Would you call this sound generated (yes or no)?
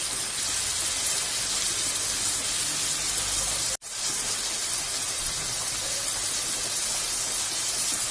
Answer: no